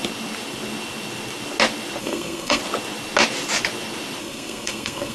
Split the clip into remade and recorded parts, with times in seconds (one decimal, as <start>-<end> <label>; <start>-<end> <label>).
0.0-2.0 recorded; 2.0-2.6 remade; 2.6-4.2 recorded; 4.2-5.1 remade